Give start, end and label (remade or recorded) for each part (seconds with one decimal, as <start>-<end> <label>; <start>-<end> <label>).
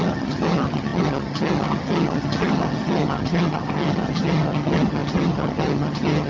0.0-6.3 remade